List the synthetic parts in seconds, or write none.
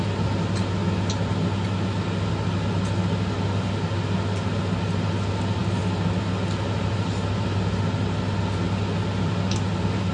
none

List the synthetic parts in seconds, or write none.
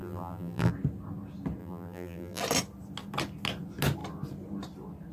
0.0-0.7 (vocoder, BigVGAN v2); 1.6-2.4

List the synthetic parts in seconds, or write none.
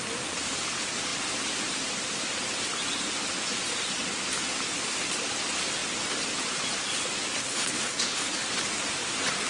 7.4-8.3 (codec, HILCodec)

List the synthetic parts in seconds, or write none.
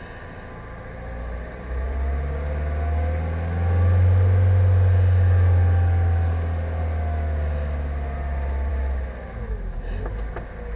none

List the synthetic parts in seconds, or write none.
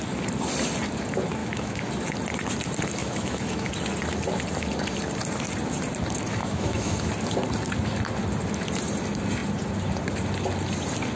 1.4-1.9 (autoencoder, DAC-VAE); 3.0-3.7; 6.3-7.1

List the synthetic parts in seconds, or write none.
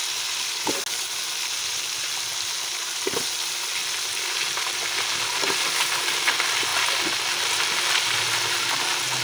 none